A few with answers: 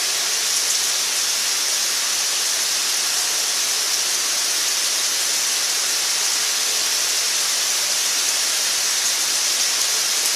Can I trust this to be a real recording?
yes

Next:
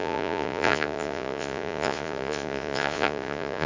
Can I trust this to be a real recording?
no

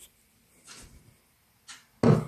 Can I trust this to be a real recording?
yes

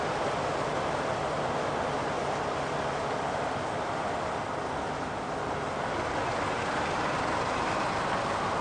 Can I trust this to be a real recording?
yes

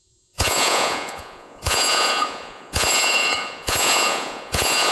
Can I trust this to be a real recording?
no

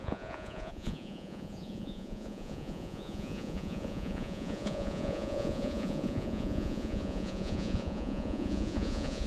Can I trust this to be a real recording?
no